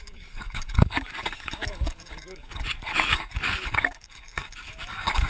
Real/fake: fake